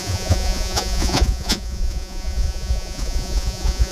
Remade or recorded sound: remade